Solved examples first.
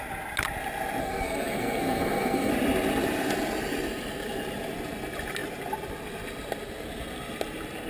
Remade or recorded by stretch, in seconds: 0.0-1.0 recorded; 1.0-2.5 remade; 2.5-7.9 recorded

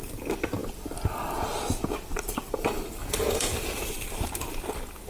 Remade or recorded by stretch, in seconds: 0.0-3.0 recorded; 3.0-4.3 remade; 4.3-5.1 recorded